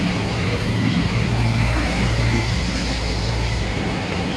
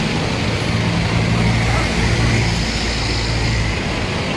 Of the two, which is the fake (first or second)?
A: first